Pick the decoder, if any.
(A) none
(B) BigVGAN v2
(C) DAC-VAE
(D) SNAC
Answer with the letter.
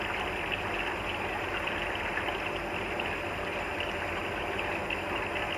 A